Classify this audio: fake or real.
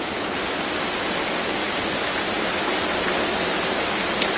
real